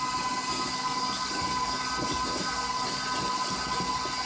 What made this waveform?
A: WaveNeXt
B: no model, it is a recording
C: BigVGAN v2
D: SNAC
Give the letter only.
B